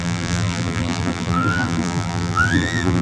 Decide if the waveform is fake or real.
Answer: fake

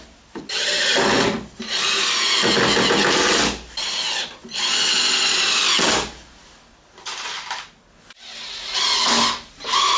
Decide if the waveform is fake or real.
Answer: real